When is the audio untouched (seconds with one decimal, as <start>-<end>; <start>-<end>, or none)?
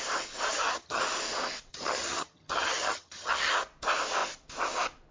0.0-0.5; 1.0-1.7; 3.5-5.1